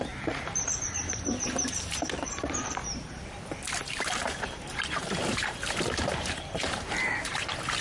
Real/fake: fake